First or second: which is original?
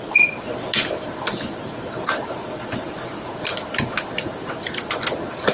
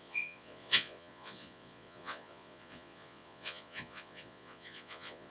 first